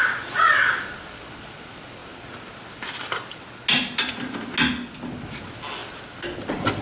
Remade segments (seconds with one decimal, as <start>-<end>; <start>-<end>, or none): none